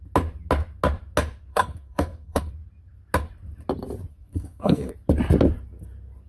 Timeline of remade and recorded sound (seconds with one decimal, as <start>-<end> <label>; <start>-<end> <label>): 0.0-1.5 recorded; 1.5-2.5 remade; 2.5-4.1 recorded; 4.1-4.9 remade; 4.9-6.3 recorded